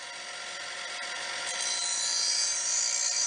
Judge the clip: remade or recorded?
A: recorded